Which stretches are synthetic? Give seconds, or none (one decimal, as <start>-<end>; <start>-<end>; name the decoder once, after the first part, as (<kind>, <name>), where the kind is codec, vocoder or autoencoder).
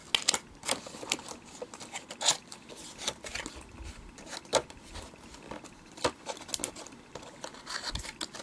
none